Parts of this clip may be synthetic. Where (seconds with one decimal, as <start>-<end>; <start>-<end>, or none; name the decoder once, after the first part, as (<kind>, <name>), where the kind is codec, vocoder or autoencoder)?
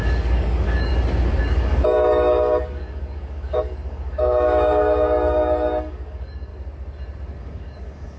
0.0-0.9 (codec, DAC); 1.4-6.5; 7.4-8.2